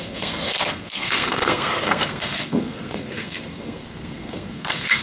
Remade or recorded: remade